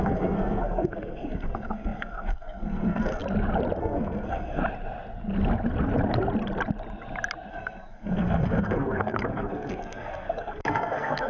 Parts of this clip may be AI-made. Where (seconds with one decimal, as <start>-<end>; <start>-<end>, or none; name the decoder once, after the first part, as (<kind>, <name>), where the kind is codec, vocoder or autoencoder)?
0.0-3.2 (codec, SNAC); 3.8-4.6; 7.5-11.3

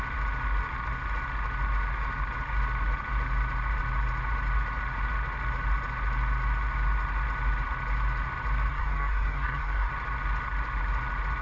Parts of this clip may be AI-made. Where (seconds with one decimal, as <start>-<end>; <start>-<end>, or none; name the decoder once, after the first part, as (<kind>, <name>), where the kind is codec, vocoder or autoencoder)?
8.7-9.9 (codec, SNAC)

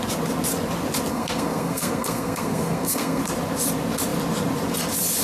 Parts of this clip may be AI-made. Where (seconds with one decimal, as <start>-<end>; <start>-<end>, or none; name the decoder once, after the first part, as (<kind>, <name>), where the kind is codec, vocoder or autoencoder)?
1.1-3.2 (codec, SNAC)